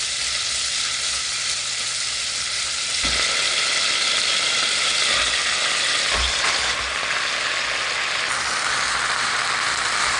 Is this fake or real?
real